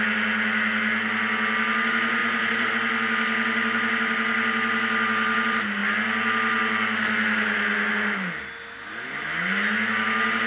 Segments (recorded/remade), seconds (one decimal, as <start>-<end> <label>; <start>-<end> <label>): 0.0-2.2 recorded; 2.2-2.7 remade; 2.7-10.5 recorded